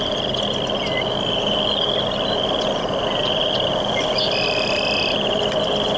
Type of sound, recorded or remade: recorded